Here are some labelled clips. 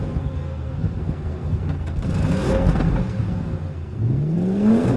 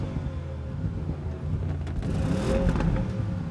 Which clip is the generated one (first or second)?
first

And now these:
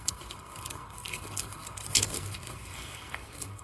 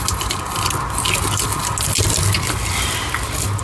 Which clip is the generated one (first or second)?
first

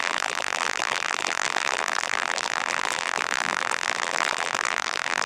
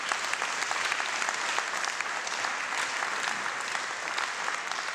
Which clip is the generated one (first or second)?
first